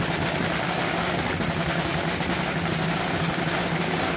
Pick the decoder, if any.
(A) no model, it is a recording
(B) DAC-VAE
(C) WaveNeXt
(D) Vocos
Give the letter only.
A